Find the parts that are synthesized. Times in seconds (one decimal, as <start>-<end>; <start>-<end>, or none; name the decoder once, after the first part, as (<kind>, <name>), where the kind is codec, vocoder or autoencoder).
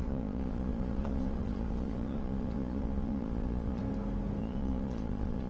0.0-3.8 (vocoder, Vocos); 4.4-5.5